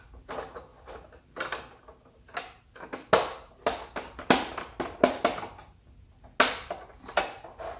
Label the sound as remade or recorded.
recorded